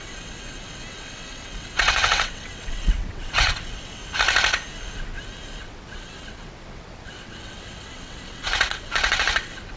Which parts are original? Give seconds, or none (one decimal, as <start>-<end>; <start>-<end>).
4.0-5.6

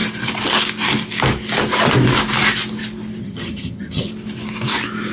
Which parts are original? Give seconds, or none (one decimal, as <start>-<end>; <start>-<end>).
0.0-3.2; 4.1-5.1